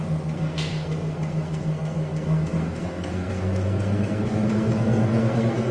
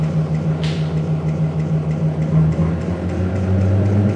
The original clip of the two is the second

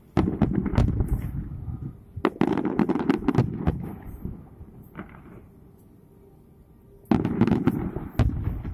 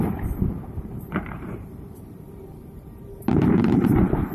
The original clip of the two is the first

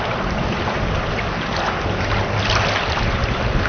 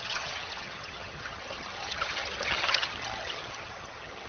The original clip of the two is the first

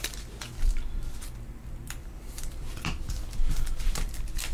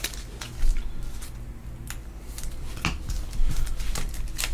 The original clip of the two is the second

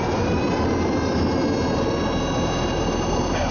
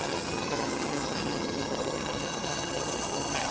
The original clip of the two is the first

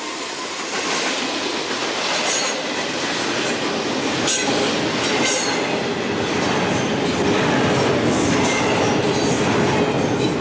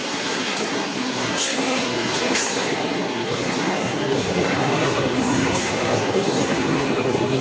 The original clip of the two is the first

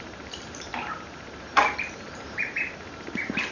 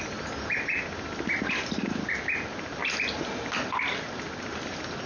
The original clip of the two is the second